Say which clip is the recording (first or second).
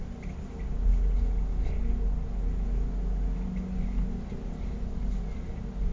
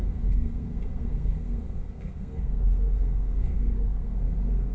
first